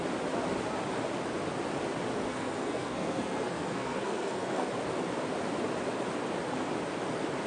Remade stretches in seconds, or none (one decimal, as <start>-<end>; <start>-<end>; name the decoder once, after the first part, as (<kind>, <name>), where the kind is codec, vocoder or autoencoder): 2.3-4.7 (codec, SNAC)